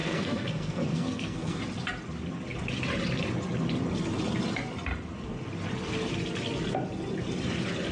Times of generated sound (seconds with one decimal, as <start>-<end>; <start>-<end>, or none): 0.0-1.6